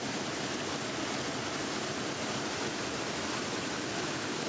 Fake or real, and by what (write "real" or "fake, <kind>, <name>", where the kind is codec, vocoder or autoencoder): fake, vocoder, BigVGAN v2